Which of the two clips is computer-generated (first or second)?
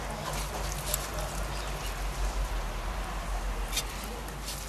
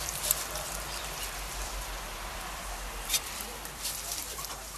second